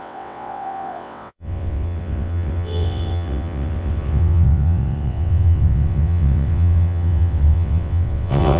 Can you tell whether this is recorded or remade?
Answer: remade